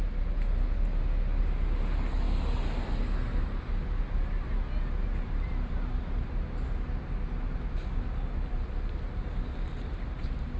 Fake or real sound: real